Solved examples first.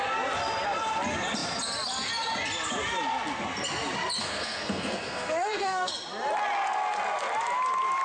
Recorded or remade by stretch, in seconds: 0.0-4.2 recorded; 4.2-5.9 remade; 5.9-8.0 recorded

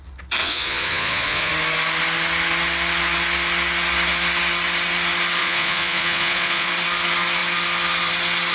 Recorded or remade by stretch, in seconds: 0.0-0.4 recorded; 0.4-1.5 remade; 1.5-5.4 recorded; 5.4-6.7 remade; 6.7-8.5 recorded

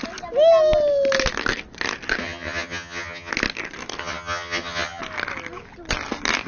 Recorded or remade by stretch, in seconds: 0.0-2.2 recorded; 2.2-3.3 remade; 3.3-4.0 recorded; 4.0-5.0 remade; 5.0-6.5 recorded

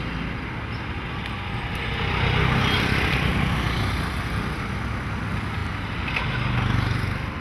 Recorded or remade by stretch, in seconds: 0.0-7.4 recorded

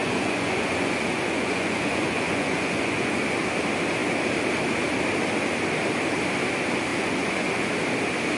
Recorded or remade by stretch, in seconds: 0.0-3.2 remade; 3.2-6.9 recorded; 6.9-7.7 remade; 7.7-8.4 recorded

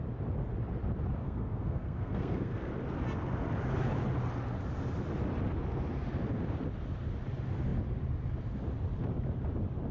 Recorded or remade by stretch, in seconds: 0.0-1.2 recorded; 1.2-2.7 remade; 2.7-9.9 recorded

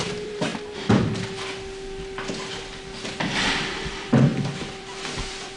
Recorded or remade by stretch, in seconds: 0.0-0.5 remade; 0.5-3.9 recorded; 3.9-5.6 remade

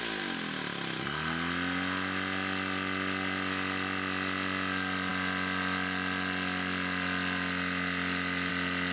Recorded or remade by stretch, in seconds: 0.0-8.9 recorded